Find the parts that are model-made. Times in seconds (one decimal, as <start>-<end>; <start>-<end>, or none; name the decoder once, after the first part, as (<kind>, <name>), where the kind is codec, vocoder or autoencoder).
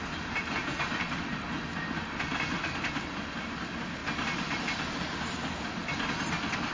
none